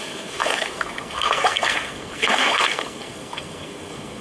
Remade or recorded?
remade